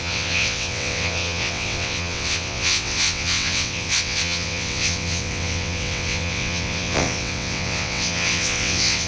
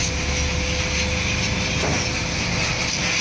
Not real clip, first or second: first